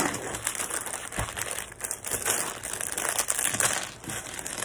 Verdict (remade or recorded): recorded